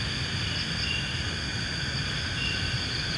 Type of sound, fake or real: real